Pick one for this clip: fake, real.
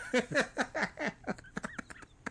real